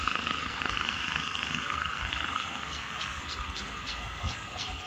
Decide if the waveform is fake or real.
fake